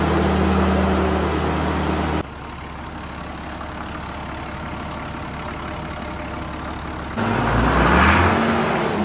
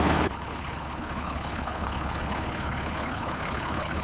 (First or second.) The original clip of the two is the first